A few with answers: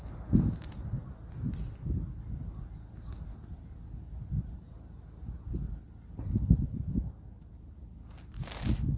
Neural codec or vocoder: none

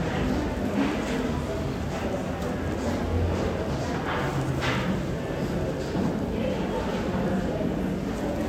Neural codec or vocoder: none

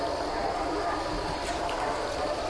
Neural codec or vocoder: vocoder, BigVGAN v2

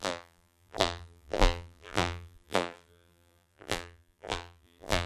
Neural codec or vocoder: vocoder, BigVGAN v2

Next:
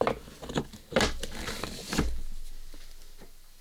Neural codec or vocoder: none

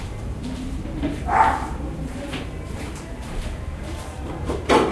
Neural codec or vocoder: vocoder, BigVGAN v2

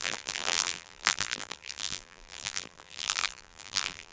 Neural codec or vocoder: vocoder, BigVGAN v2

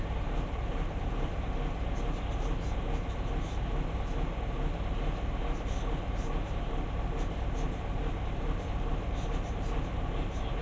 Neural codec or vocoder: vocoder, BigVGAN v2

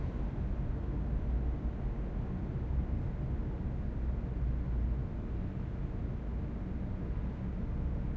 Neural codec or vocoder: none